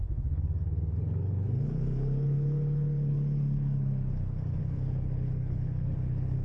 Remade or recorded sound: remade